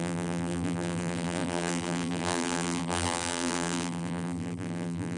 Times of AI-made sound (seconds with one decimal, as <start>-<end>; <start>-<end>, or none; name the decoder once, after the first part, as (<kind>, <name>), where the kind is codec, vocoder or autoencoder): 0.0-5.2 (vocoder, BigVGAN v2)